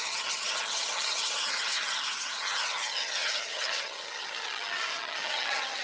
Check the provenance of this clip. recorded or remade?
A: remade